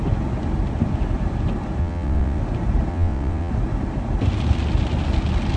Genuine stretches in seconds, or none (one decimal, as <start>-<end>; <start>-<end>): 0.0-1.8; 2.4-2.9; 3.5-5.6